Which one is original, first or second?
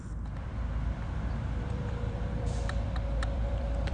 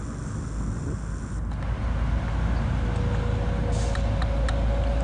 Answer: second